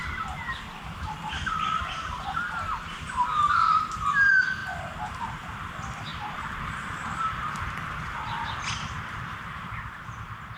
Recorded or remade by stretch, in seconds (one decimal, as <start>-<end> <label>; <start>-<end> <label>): 0.0-1.7 remade; 1.7-6.1 recorded; 6.1-9.8 remade; 9.8-10.6 recorded